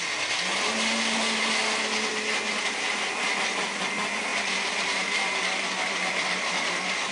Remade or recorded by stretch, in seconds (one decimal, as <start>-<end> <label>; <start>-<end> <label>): 0.0-4.3 recorded; 4.3-7.1 remade